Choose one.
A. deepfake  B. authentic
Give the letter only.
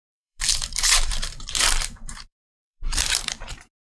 A